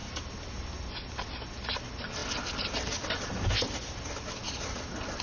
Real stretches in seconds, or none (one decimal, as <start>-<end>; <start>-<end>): 0.0-5.2